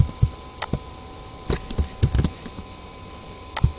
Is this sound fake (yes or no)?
yes